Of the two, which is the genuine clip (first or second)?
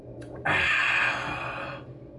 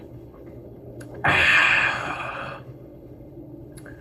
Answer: first